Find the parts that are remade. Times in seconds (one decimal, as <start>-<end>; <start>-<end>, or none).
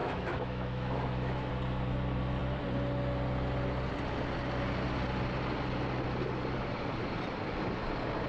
0.0-1.5